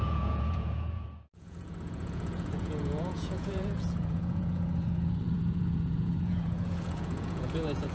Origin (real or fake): fake